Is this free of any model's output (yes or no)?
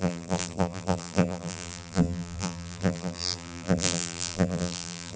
no